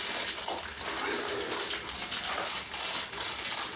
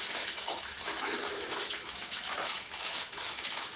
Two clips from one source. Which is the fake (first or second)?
second